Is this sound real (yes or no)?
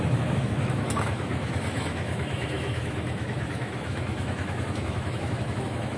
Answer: no